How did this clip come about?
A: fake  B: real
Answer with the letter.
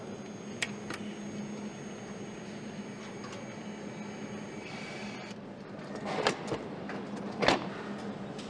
B